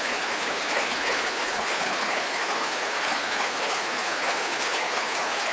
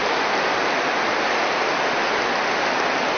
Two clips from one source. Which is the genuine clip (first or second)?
second